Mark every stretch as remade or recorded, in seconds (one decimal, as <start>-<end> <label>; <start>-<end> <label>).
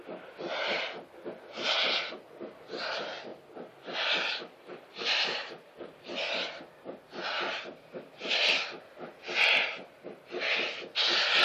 0.0-11.4 recorded